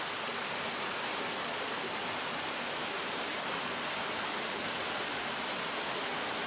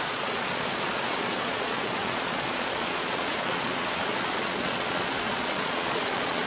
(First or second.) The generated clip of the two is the second